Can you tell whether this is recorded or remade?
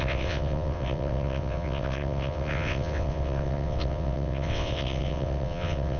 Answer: remade